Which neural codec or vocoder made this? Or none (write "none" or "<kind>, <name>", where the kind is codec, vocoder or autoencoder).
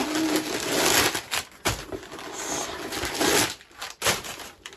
none